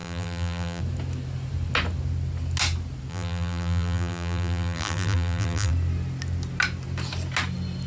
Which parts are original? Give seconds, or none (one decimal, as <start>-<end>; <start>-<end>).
0.8-3.1; 5.7-7.9